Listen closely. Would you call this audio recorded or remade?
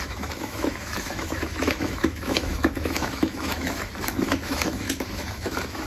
remade